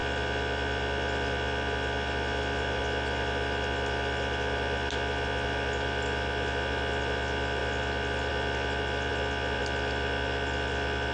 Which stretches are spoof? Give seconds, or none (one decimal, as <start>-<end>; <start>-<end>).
none